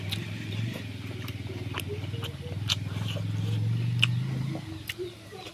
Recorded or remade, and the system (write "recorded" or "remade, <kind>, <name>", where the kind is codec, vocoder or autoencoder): recorded